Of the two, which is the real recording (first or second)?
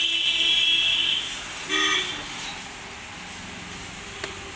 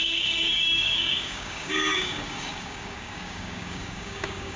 first